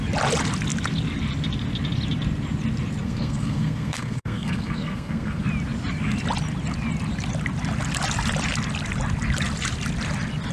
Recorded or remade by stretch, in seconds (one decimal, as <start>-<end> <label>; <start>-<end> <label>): 0.0-3.0 recorded; 3.0-5.4 remade; 5.4-10.5 recorded